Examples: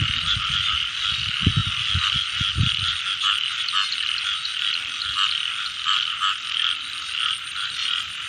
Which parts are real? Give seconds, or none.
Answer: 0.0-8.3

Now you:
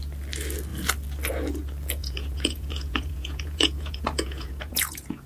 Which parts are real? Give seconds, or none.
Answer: 0.0-2.0

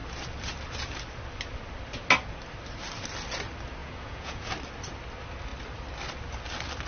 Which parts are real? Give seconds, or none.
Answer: 0.0-3.8; 4.5-6.9

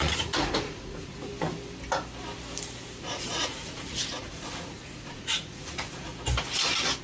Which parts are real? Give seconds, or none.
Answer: 1.3-3.0; 6.1-7.0

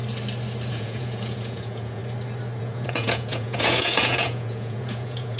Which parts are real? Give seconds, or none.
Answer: 0.0-0.7; 2.0-2.6

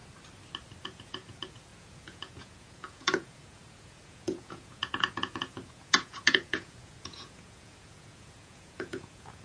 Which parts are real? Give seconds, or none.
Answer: 0.0-0.8

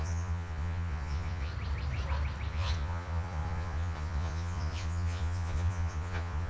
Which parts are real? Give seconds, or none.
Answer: 1.5-2.5